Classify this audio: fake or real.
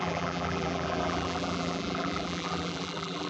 fake